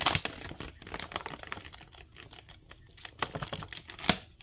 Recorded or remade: recorded